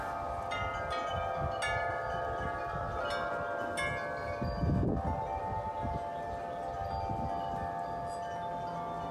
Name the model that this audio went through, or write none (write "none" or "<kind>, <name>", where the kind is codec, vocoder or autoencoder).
none